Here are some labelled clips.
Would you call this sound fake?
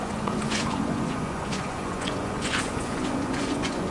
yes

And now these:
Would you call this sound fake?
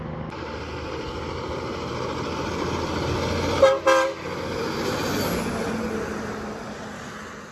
no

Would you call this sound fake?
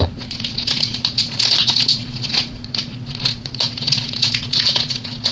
yes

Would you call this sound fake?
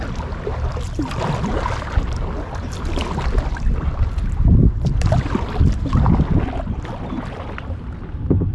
no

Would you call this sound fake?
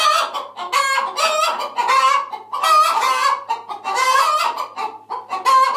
no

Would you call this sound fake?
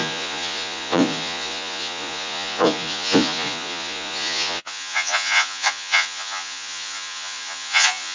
yes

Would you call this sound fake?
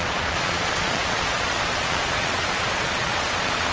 yes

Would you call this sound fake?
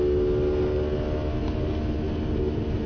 no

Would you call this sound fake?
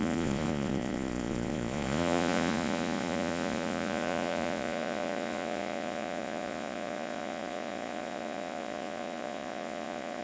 yes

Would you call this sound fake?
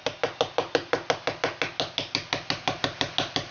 no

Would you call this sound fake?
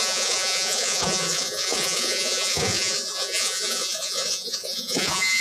yes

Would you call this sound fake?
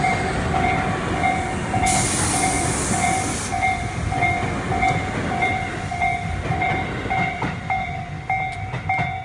no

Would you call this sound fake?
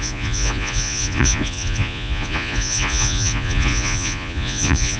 yes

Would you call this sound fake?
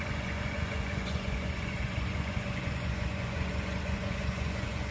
yes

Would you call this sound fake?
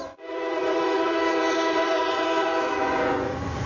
yes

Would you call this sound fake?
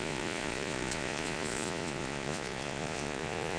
yes